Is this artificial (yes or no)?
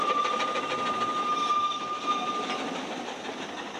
no